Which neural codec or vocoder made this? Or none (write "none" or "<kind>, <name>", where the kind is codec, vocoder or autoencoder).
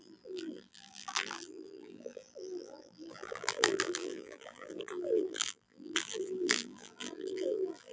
vocoder, BigVGAN v2